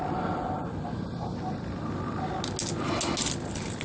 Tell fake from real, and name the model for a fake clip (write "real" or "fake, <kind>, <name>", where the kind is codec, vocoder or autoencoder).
real